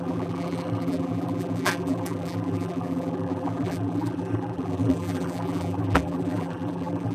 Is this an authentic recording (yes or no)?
no